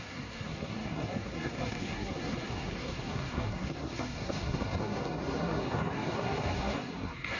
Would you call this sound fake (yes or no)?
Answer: yes